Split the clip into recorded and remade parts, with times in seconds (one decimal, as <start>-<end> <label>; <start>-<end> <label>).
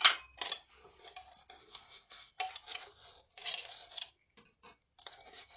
0.0-1.6 recorded; 1.6-2.3 remade; 2.3-5.6 recorded